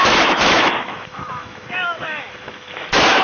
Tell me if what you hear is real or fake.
fake